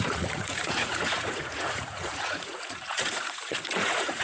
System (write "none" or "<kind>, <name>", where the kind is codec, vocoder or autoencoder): vocoder, Vocos